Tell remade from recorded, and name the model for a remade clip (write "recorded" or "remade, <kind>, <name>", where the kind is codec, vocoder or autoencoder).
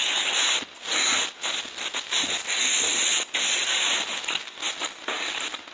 recorded